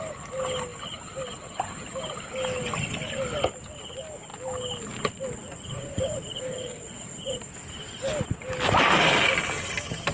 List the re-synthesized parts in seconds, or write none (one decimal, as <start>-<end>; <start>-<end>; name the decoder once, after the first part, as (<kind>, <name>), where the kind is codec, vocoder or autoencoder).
5.4-7.4 (vocoder, Vocos)